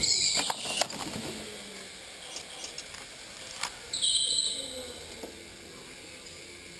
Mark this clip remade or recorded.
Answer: recorded